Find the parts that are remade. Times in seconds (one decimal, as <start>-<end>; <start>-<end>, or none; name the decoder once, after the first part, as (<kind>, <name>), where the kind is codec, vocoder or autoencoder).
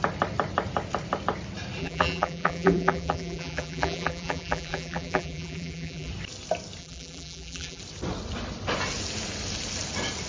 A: 1.8-6.1 (vocoder, BigVGAN v2); 6.8-7.8